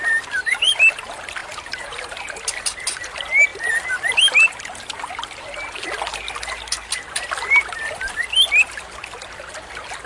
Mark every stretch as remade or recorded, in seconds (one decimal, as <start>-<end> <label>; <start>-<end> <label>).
0.0-10.1 recorded